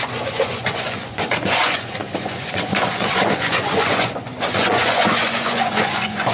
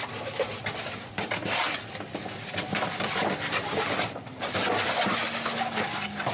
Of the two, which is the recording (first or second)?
second